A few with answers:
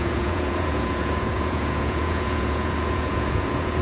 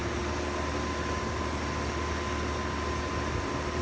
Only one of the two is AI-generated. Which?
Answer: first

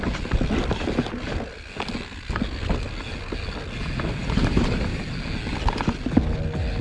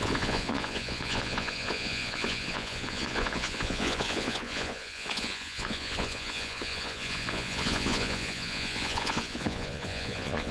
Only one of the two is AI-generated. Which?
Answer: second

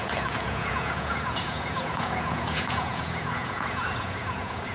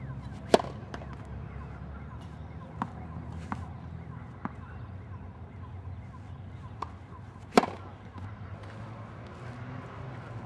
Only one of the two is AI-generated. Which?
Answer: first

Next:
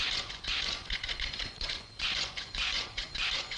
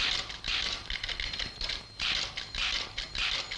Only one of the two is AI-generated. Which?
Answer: first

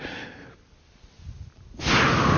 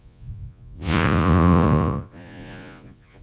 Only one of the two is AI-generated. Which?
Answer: second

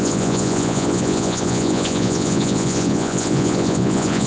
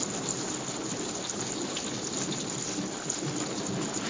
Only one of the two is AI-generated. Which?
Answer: first